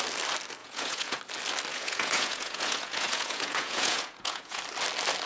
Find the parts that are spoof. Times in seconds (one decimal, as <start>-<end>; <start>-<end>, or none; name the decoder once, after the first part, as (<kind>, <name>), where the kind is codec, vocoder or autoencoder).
0.6-1.2 (vocoder, Vocos); 1.7-4.6